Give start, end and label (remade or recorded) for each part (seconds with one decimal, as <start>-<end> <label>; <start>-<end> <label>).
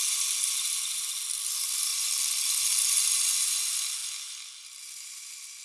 0.0-5.6 recorded